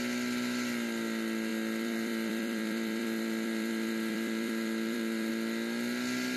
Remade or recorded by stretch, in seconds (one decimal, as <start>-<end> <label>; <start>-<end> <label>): 0.0-1.5 recorded; 1.5-5.3 remade; 5.3-6.4 recorded